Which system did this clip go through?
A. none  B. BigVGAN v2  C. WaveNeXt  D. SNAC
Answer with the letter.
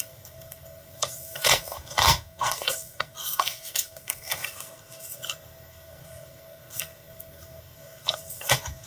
D